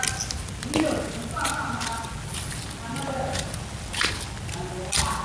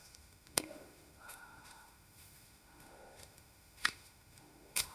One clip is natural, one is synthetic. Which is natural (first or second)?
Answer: first